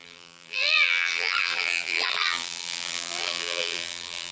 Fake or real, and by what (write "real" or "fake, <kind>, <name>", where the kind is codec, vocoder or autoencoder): fake, vocoder, BigVGAN v2